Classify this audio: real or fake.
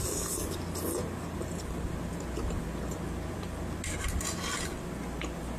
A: real